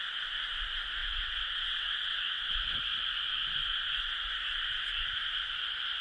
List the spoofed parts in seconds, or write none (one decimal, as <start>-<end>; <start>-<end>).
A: 1.0-2.8